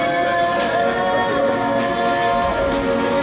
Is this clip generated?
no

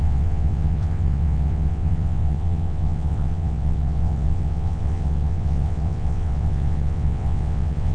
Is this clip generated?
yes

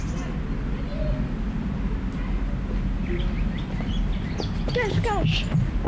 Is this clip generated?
no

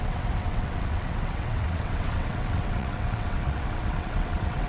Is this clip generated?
yes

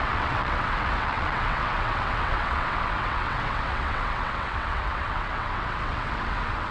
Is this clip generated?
yes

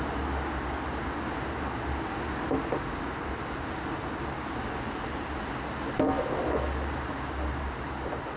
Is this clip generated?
no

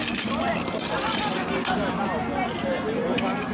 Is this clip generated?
no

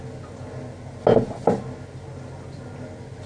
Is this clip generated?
no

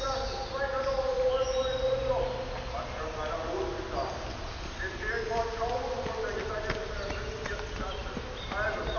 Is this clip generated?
no